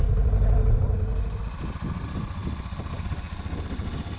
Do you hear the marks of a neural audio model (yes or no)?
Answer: no